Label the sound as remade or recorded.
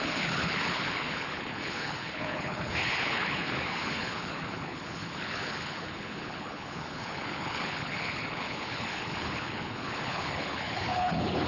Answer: remade